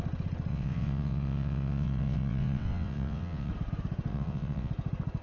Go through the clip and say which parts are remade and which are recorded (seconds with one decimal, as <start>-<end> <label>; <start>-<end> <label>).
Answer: 0.0-0.5 recorded; 0.5-3.5 remade; 3.5-4.1 recorded; 4.1-4.7 remade; 4.7-5.2 recorded